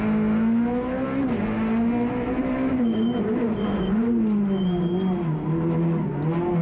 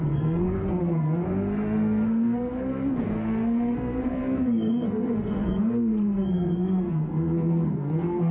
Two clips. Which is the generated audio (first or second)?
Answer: second